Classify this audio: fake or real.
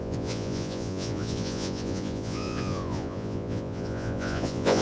fake